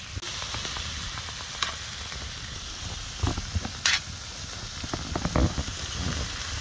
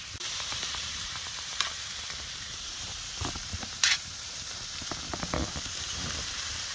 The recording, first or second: first